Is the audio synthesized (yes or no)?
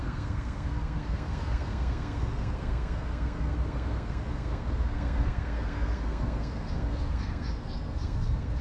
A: yes